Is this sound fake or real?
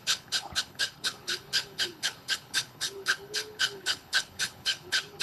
fake